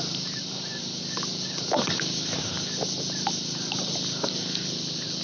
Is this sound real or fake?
real